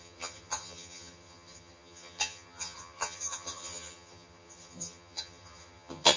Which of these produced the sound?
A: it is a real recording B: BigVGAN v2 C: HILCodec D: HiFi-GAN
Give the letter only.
D